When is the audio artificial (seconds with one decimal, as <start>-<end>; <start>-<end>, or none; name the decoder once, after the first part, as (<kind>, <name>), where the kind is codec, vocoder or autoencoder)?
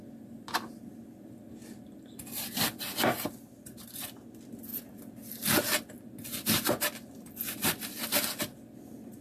none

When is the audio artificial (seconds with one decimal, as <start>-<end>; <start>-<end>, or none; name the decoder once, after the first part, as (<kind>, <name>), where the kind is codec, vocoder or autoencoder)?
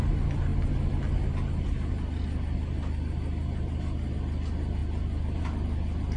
none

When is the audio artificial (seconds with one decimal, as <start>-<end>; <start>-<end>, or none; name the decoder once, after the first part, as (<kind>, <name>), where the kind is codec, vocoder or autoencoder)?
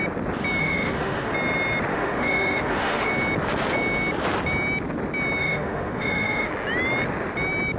0.6-1.3 (autoencoder, DAC-VAE); 1.9-3.1; 5.4-6.5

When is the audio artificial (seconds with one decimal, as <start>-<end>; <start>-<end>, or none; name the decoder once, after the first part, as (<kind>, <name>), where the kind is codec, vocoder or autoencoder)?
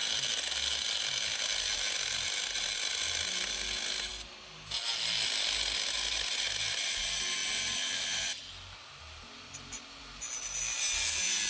none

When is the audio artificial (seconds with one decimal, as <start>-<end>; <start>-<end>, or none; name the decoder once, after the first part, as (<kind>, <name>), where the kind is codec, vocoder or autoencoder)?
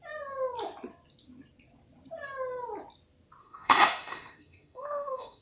3.4-5.4 (autoencoder, DAC-VAE)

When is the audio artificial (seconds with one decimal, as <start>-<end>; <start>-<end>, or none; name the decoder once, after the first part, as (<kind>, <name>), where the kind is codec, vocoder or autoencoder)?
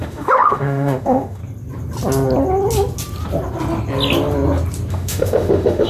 0.0-1.4 (autoencoder, DAC-VAE); 4.9-5.9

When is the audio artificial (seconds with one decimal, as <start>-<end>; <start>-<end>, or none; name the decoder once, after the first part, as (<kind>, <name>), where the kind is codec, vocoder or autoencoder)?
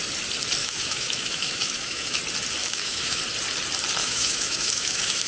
0.6-2.2 (autoencoder, DAC-VAE); 2.6-3.2; 4.0-5.3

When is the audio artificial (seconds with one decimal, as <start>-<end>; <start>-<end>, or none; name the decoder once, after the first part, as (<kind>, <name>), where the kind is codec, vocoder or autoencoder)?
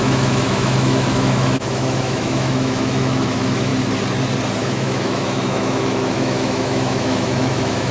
0.0-3.7 (autoencoder, DAC-VAE); 4.6-7.9